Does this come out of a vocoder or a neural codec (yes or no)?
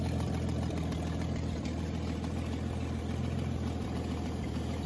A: no